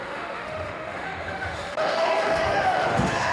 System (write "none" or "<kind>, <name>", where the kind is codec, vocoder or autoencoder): autoencoder, DAC-VAE